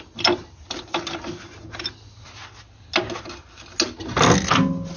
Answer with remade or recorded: recorded